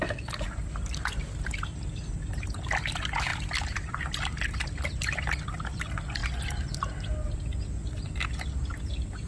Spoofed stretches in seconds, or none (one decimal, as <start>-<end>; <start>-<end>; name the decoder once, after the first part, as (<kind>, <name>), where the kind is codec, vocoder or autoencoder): none